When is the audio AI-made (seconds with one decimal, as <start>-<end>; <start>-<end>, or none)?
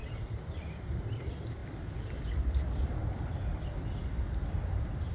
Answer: 0.0-3.4; 4.5-5.1